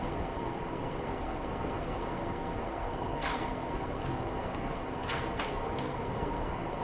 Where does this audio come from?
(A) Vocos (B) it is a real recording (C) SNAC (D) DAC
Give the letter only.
C